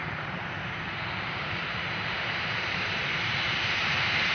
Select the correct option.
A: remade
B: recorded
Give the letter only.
A